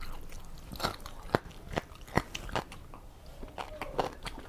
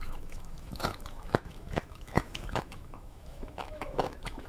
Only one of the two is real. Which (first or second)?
first